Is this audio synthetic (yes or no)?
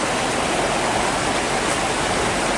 no